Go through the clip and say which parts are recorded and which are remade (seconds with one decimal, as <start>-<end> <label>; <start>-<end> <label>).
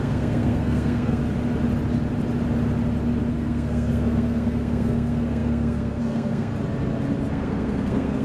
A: 0.0-1.2 remade; 1.2-3.3 recorded; 3.3-6.5 remade; 6.5-7.3 recorded; 7.3-8.2 remade